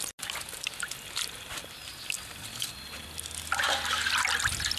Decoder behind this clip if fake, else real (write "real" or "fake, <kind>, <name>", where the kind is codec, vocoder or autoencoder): real